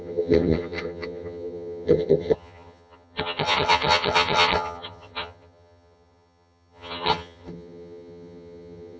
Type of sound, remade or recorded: remade